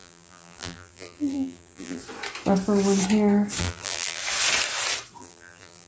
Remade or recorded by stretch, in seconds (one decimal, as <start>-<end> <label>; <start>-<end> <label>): 0.0-2.0 remade; 2.0-3.6 recorded; 3.6-4.2 remade; 4.2-5.2 recorded; 5.2-5.9 remade